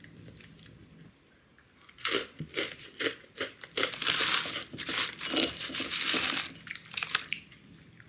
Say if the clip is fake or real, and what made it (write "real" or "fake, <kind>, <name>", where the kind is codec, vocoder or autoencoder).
real